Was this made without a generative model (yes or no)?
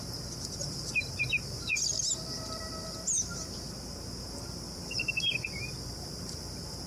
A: yes